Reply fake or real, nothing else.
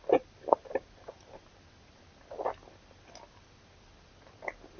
real